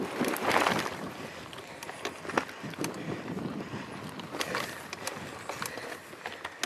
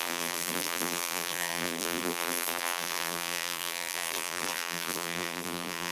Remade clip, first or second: second